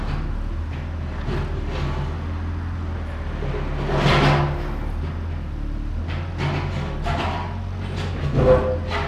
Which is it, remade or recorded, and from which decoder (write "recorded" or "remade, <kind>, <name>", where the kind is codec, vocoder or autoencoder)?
recorded